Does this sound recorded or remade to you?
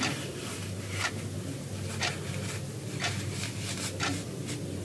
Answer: recorded